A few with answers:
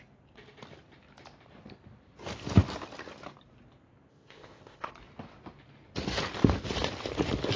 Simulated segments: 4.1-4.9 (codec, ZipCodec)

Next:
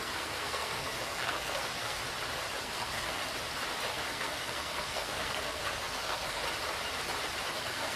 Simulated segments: 0.0-2.0 (codec, SNAC); 2.6-3.2; 3.9-6.4; 7.6-8.0

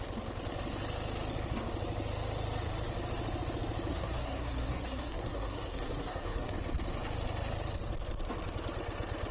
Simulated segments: 3.9-6.5 (codec, SNAC)

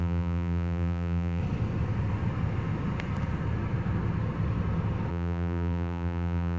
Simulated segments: 0.0-1.4 (vocoder, BigVGAN v2); 5.1-6.6

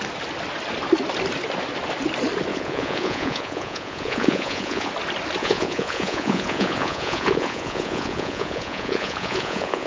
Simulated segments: 2.5-4.9 (vocoder, Vocos); 5.4-9.9